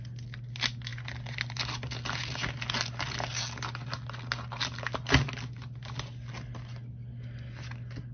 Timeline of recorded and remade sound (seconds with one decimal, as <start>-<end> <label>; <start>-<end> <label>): 0.0-8.1 recorded